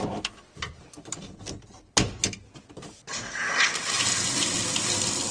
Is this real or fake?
real